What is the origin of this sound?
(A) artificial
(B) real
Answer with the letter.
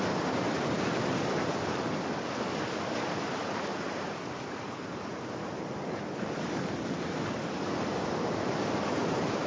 A